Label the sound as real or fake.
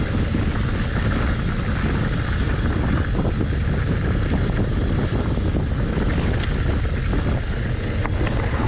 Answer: real